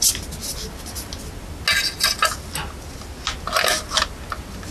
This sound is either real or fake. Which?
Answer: real